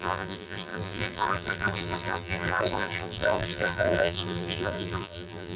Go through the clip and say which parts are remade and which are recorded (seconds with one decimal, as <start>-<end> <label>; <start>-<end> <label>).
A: 0.0-5.6 remade